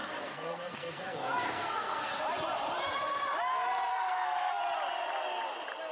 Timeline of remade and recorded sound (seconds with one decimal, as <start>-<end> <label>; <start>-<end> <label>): 0.0-2.1 remade; 2.1-3.9 recorded; 3.9-4.6 remade; 4.6-5.9 recorded